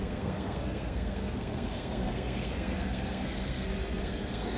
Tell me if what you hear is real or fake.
fake